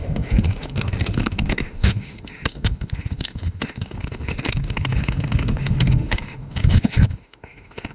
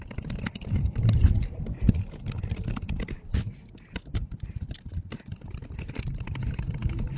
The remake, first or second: first